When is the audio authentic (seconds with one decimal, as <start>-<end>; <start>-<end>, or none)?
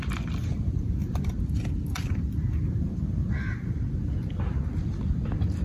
0.0-0.4; 3.8-5.6